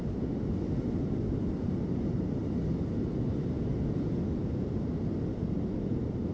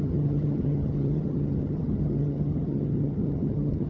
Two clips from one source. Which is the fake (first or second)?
second